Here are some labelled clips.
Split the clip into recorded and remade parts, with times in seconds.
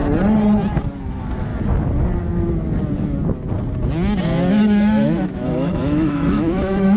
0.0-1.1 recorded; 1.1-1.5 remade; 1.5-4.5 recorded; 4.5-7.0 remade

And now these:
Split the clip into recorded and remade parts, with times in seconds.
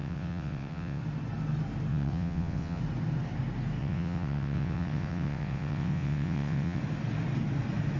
0.0-1.0 remade; 1.0-1.9 recorded; 1.9-2.8 remade; 2.8-3.8 recorded; 3.8-6.8 remade; 6.8-8.0 recorded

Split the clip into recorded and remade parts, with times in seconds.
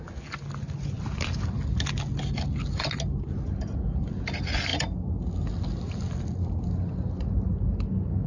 0.0-8.3 recorded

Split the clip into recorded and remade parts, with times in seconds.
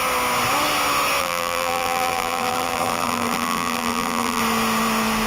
0.0-1.2 recorded; 1.2-4.4 remade; 4.4-5.3 recorded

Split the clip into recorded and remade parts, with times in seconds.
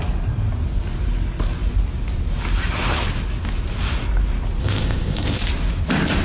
0.0-4.6 recorded; 4.6-5.4 remade; 5.4-6.2 recorded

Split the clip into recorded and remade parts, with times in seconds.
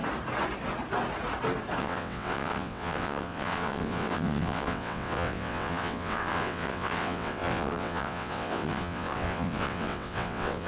0.0-1.8 recorded; 1.8-10.7 remade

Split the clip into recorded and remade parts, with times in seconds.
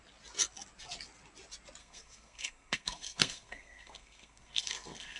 0.0-1.8 recorded; 1.8-5.2 remade